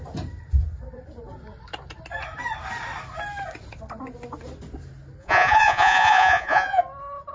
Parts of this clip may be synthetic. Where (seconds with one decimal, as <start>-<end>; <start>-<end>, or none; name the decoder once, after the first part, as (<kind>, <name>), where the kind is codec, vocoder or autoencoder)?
5.2-6.8 (vocoder, Vocos)